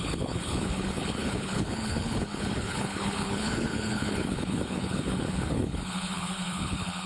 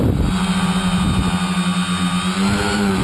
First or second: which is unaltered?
second